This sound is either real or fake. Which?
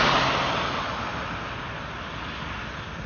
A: real